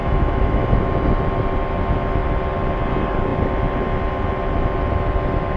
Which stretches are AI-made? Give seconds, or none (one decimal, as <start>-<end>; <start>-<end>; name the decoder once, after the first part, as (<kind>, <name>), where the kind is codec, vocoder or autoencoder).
0.0-0.9 (autoencoder, DAC-VAE)